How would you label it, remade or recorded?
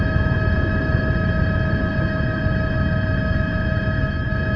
remade